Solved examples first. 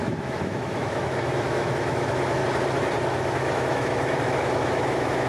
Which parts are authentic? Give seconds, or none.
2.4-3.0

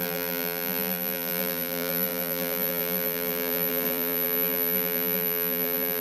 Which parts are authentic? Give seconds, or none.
none

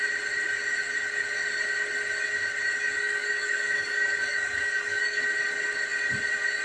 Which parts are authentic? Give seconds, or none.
0.0-3.0; 5.2-6.6

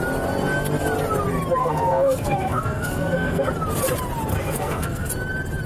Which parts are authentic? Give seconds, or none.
0.0-1.6; 3.5-4.3; 5.1-5.7

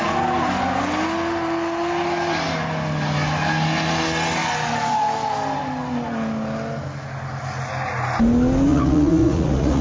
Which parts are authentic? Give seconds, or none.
0.0-8.7

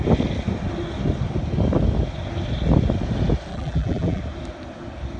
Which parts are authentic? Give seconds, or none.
0.0-3.5; 4.2-5.2

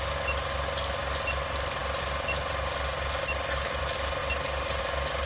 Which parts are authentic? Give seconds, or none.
0.0-5.3